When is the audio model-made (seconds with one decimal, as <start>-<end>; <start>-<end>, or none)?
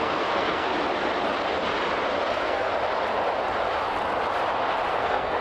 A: 0.0-0.7; 2.3-2.7; 4.9-5.4